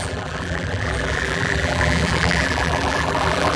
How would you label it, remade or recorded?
remade